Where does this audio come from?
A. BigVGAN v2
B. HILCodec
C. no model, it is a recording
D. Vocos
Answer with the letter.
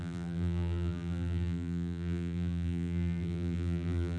A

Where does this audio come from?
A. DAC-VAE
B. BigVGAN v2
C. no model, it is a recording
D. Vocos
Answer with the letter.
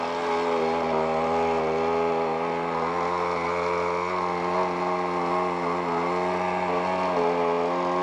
C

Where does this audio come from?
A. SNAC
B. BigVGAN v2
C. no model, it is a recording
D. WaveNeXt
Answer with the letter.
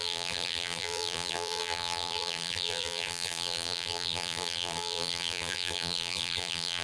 B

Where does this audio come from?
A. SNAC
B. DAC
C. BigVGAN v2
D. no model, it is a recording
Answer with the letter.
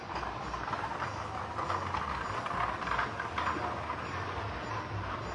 D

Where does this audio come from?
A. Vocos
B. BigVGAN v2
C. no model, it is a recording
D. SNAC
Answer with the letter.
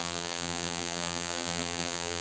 B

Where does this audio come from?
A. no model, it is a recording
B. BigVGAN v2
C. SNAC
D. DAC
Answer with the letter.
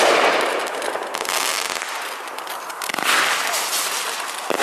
A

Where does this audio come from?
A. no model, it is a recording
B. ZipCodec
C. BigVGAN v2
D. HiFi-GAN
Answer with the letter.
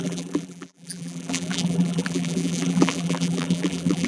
C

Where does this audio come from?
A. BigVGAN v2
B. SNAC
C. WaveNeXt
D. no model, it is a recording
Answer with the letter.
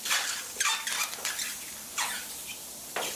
D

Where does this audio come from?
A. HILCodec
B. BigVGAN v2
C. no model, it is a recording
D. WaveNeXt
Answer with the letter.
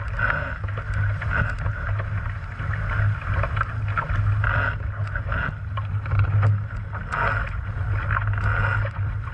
C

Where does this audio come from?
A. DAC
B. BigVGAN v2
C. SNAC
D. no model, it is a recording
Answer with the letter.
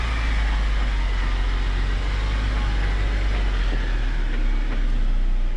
D